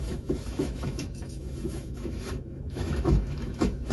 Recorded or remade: remade